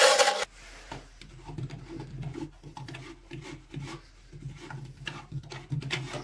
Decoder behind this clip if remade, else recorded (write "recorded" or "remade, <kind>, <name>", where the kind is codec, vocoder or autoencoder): recorded